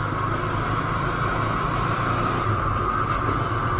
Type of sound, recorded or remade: recorded